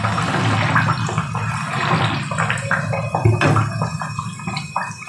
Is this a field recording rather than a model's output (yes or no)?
yes